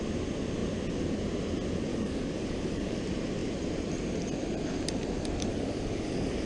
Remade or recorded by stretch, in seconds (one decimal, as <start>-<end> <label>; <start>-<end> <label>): 0.0-1.9 recorded; 1.9-3.0 remade; 3.0-5.5 recorded; 5.5-6.5 remade